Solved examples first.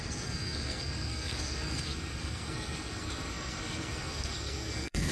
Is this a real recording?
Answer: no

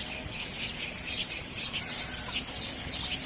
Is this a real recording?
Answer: yes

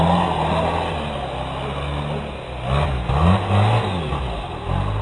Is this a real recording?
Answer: yes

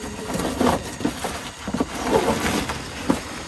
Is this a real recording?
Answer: yes